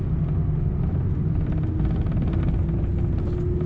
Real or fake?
real